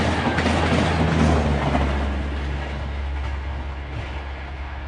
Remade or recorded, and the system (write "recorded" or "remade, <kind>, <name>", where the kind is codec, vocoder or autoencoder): recorded